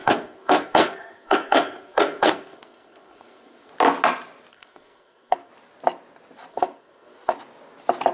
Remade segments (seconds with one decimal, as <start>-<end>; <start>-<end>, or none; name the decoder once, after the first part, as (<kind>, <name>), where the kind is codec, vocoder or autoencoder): 0.0-3.7 (codec, SNAC); 4.5-5.5; 6.5-7.4